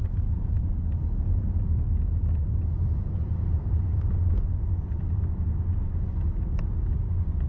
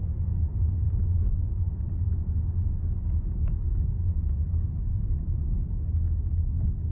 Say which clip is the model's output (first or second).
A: second